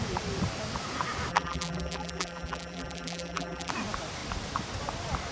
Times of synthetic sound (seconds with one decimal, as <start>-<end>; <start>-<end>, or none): 1.3-3.7